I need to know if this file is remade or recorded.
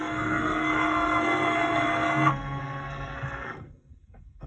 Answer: remade